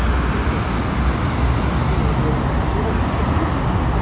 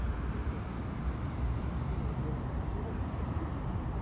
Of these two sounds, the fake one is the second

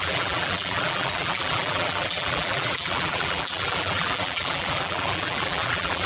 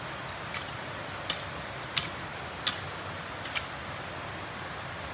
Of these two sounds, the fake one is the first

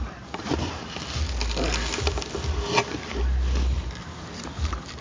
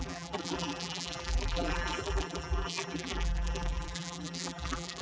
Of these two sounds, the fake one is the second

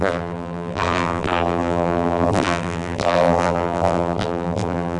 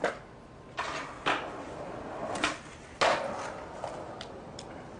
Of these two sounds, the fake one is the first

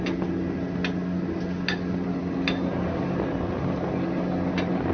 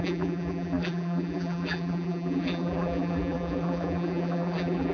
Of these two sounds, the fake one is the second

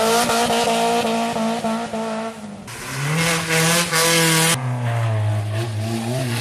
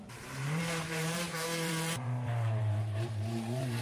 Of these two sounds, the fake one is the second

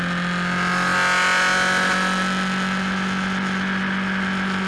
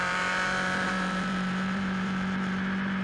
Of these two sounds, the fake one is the second